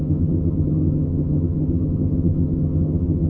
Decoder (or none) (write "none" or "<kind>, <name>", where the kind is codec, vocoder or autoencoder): vocoder, HiFi-GAN